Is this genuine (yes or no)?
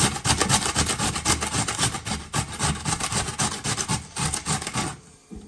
yes